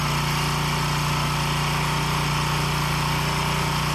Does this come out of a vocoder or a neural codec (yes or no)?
no